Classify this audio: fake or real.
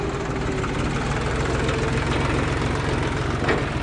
real